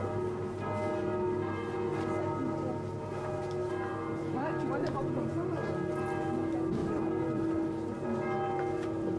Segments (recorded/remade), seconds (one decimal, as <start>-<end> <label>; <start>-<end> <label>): 0.0-4.2 recorded; 4.2-5.9 remade; 5.9-6.8 recorded; 6.8-7.4 remade; 7.4-9.2 recorded